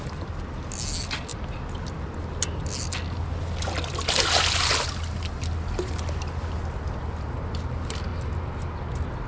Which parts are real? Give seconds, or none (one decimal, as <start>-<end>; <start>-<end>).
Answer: 0.0-9.3